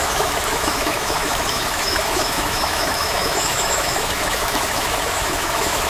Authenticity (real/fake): fake